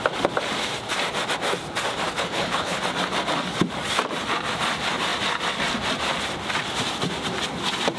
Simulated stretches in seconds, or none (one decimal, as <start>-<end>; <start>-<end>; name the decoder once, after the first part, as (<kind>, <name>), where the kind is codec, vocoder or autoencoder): 2.1-2.8 (codec, HILCodec)